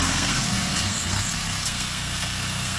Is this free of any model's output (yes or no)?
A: no